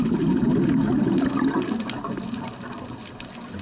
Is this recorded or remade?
recorded